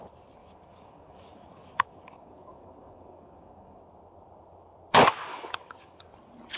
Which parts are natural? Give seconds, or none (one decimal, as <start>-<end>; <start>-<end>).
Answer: 0.0-0.4; 3.8-5.3; 6.1-6.6